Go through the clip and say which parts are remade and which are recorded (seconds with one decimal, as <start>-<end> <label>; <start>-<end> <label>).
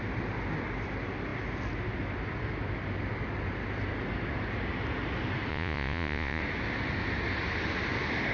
0.0-5.5 recorded; 5.5-6.4 remade; 6.4-8.3 recorded